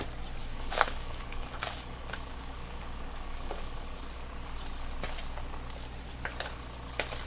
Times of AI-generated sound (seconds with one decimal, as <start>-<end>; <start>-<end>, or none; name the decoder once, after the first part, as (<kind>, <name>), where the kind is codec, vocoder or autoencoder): 0.4-4.0 (codec, DAC)